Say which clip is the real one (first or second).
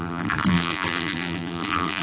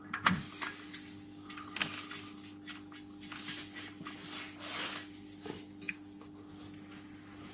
second